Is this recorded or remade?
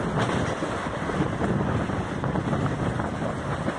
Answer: recorded